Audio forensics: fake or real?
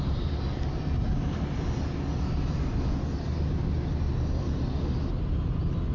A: real